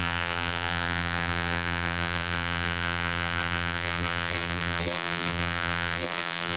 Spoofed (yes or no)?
yes